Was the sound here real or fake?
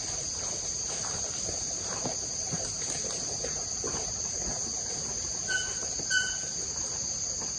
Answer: real